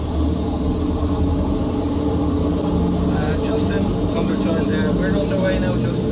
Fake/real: real